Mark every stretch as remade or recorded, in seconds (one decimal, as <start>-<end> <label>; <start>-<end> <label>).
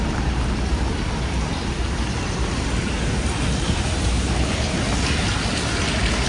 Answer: 0.0-4.1 recorded; 4.1-4.7 remade; 4.7-6.3 recorded